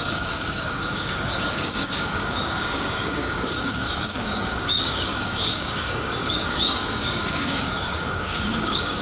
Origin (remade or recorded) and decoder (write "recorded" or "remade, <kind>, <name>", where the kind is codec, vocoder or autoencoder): remade, codec, DAC